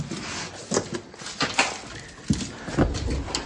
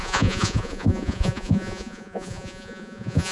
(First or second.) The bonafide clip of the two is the first